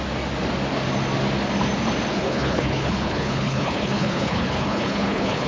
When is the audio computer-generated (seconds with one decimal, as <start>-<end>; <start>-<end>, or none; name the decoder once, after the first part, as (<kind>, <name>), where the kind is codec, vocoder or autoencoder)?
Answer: 2.1-5.5 (codec, HILCodec)